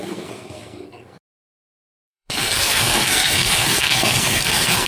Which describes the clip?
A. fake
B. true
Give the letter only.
A